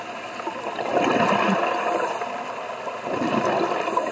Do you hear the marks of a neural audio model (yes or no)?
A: no